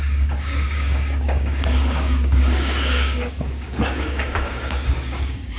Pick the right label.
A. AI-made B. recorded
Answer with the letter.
A